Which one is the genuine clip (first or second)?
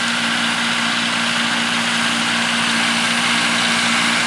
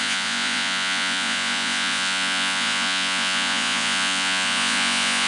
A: first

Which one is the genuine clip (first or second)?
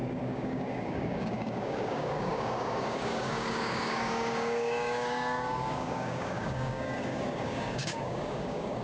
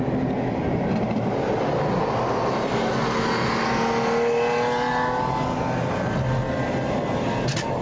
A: second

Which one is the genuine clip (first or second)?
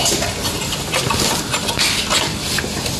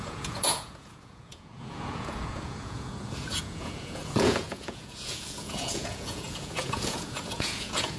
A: first